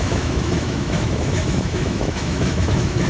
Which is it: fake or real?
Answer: fake